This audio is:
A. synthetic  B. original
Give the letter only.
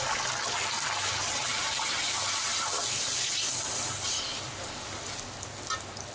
B